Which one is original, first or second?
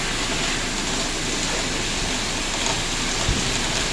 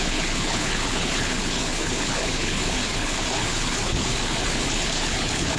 first